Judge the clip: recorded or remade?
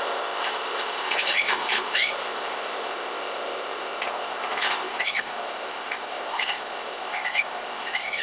remade